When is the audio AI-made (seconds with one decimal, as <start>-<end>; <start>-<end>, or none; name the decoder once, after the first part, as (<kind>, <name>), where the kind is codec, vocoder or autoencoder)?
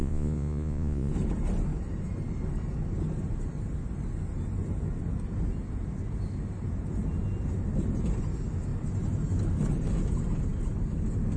0.0-1.1 (vocoder, Vocos)